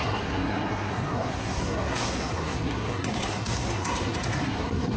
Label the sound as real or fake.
fake